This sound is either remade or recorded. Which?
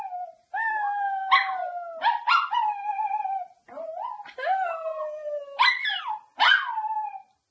recorded